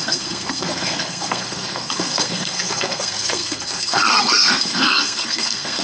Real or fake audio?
fake